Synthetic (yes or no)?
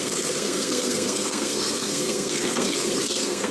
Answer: yes